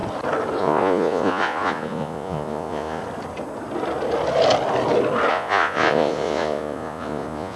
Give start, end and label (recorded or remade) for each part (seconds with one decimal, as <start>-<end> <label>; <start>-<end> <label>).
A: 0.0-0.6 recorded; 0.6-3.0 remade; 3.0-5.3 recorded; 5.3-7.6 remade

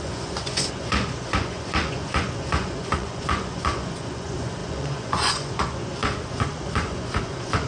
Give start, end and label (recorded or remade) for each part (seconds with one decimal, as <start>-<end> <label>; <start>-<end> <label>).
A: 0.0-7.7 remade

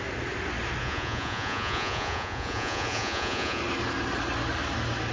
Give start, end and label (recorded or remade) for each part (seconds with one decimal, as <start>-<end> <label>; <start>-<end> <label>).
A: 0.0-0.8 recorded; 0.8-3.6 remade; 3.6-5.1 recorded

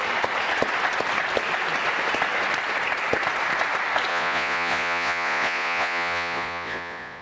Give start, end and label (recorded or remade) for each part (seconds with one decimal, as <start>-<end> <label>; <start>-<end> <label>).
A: 0.0-4.1 recorded; 4.1-7.2 remade

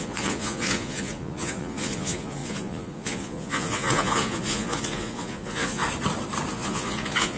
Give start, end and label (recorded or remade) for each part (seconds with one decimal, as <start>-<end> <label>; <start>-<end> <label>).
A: 0.0-5.8 remade; 5.8-6.5 recorded; 6.5-7.4 remade